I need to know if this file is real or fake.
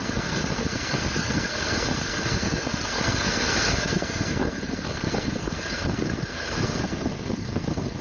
fake